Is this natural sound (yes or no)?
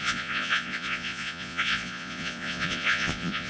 no